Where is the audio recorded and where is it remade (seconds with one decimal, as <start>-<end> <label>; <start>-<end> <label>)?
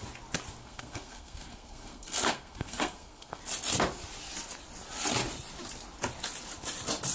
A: 0.0-0.6 recorded; 0.6-3.4 remade; 3.4-7.1 recorded